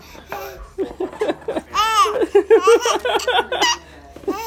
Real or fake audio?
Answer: real